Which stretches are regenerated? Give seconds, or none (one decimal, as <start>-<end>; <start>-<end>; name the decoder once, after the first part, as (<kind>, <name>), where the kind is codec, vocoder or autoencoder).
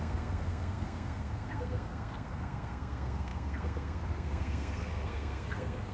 0.0-5.9 (codec, SNAC)